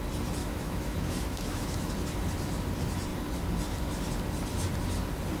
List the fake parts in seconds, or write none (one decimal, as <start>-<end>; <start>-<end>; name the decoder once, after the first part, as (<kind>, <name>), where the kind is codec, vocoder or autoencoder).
0.4-1.9 (autoencoder, DAC-VAE)